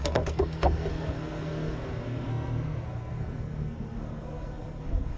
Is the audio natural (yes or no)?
no